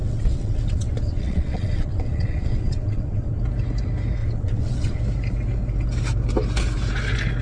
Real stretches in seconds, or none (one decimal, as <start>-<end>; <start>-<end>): 3.4-4.2; 5.0-7.4